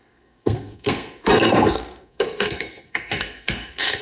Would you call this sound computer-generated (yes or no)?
yes